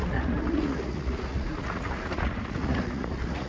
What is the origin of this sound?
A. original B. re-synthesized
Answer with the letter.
B